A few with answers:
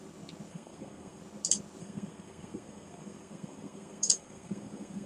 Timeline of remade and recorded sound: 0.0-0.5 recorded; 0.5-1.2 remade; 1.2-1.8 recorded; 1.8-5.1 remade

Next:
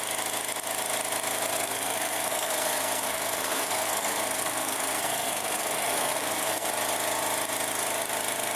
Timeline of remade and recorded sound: 0.0-1.5 recorded; 1.5-6.7 remade; 6.7-8.6 recorded

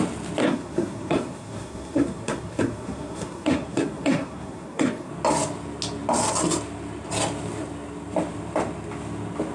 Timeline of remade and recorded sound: 0.0-0.4 recorded; 0.4-5.1 remade; 5.1-9.5 recorded

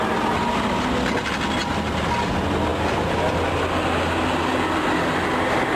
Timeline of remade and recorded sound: 0.0-5.8 recorded

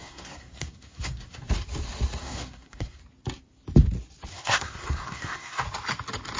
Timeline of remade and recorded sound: 0.0-1.4 remade; 1.4-2.2 recorded; 2.2-3.0 remade; 3.0-4.3 recorded; 4.3-5.6 remade; 5.6-6.4 recorded

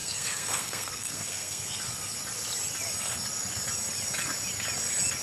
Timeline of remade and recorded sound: 0.0-1.8 remade; 1.8-5.2 recorded

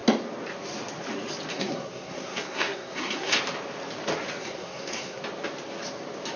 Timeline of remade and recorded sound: 0.0-1.5 recorded; 1.5-3.3 remade; 3.3-4.4 recorded; 4.4-5.2 remade; 5.2-6.4 recorded

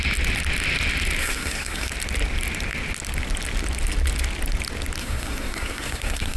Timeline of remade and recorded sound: 0.0-1.2 recorded; 1.2-1.9 remade; 1.9-5.0 recorded; 5.0-6.4 remade